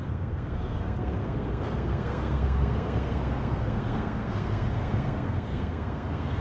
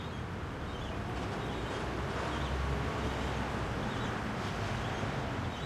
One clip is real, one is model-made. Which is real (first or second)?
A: second